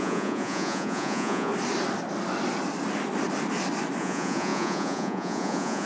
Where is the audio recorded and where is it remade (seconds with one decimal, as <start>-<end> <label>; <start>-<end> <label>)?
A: 0.0-1.5 remade; 1.5-4.0 recorded; 4.0-5.9 remade